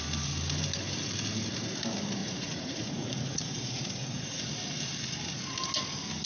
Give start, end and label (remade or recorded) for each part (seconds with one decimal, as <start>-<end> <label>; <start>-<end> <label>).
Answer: 0.0-2.2 recorded; 2.2-4.5 remade; 4.5-6.3 recorded

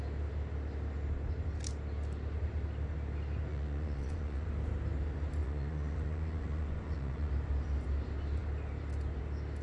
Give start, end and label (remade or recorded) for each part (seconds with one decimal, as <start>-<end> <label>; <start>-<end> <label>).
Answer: 0.0-3.5 recorded; 3.5-4.5 remade; 4.5-5.4 recorded; 5.4-7.3 remade; 7.3-9.6 recorded

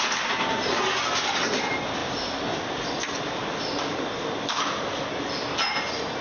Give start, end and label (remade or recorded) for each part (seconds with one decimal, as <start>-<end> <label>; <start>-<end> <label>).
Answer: 0.0-6.2 recorded

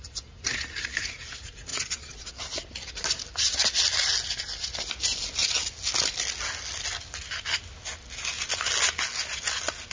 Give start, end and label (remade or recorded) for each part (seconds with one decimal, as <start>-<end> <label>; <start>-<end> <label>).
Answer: 0.0-1.7 recorded; 1.7-2.3 remade; 2.3-9.9 recorded